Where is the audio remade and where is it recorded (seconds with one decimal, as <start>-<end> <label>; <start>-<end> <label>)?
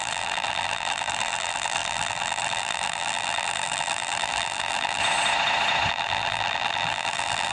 0.0-5.0 remade; 5.0-5.9 recorded; 5.9-7.5 remade